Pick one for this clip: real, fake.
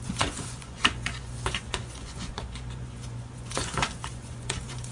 fake